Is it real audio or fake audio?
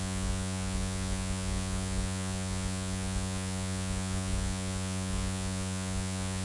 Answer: fake